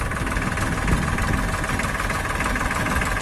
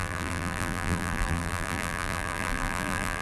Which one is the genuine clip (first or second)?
first